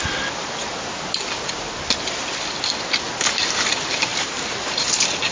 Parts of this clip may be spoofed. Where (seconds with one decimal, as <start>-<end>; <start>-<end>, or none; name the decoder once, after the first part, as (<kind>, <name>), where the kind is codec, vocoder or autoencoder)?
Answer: 4.1-5.3 (vocoder, BigVGAN v2)